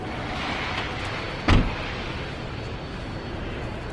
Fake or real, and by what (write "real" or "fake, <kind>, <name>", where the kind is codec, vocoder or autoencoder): real